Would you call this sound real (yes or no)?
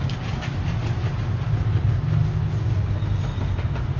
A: yes